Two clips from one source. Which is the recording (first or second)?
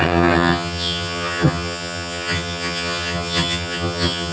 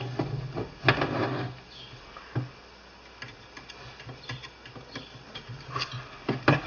second